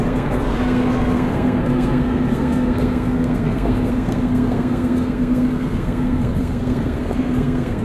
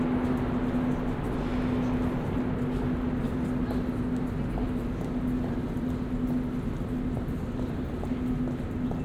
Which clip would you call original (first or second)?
second